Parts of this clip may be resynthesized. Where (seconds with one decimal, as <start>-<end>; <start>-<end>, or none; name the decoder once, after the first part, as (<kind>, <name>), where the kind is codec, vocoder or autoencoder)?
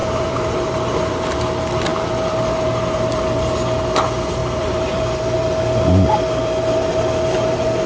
0.0-1.1 (vocoder, BigVGAN v2); 4.4-5.0